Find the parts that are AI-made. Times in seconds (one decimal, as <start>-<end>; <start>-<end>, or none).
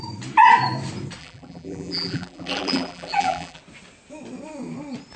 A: 1.2-3.6